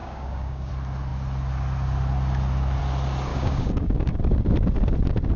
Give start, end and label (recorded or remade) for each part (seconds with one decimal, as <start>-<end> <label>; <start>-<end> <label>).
0.0-0.7 remade; 0.7-3.3 recorded; 3.3-4.2 remade; 4.2-5.4 recorded